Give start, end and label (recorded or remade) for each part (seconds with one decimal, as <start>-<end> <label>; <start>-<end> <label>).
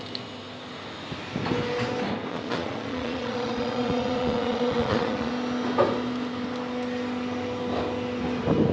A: 0.0-2.3 recorded; 2.3-5.3 remade; 5.3-8.7 recorded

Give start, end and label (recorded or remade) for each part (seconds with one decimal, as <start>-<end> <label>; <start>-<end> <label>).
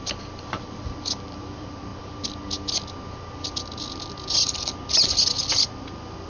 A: 0.0-1.9 remade; 1.9-5.7 recorded; 5.7-6.3 remade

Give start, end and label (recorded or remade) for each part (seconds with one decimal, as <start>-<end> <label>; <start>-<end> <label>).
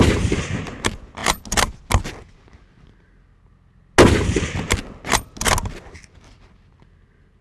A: 0.0-7.4 recorded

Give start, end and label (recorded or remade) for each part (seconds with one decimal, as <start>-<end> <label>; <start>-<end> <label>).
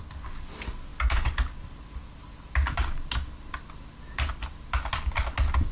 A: 0.0-5.7 recorded